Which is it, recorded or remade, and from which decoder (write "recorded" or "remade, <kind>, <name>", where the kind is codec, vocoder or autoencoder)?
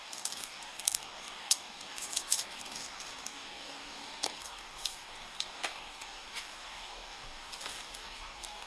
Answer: remade, codec, DAC